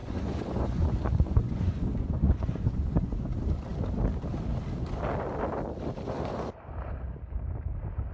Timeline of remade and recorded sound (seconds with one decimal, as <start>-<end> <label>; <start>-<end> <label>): 0.0-3.3 remade; 3.3-8.1 recorded